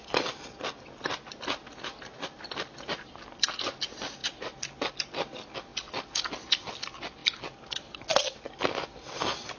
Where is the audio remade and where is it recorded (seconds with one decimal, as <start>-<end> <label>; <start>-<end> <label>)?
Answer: 0.0-9.6 recorded